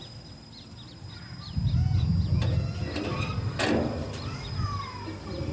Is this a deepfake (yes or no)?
no